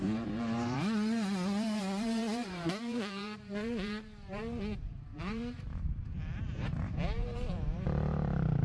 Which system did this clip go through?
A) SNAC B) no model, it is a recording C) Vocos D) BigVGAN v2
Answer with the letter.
D